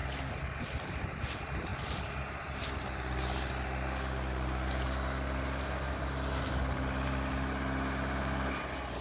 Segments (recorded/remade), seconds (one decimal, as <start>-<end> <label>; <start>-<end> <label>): 0.0-9.0 recorded